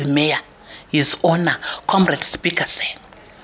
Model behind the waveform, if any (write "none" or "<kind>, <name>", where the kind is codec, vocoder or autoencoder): none